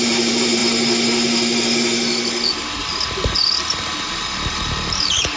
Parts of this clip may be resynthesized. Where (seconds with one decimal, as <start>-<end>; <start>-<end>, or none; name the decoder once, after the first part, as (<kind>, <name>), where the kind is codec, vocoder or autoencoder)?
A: 0.0-0.6 (vocoder, BigVGAN v2); 2.5-2.9; 4.6-5.4